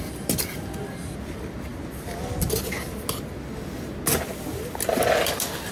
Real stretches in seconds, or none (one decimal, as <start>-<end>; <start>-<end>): 0.0-5.7